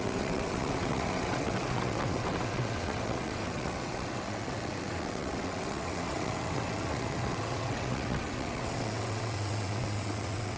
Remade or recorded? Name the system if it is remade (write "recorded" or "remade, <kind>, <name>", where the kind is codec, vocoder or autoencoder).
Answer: remade, vocoder, WaveNeXt